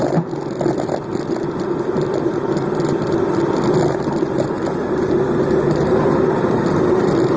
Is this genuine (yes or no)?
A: yes